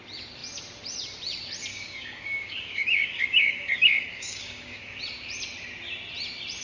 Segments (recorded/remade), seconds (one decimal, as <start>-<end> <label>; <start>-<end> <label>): 0.0-1.7 recorded; 1.7-5.0 remade; 5.0-6.6 recorded